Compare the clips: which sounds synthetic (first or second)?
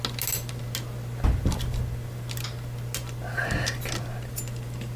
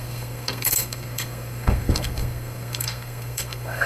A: second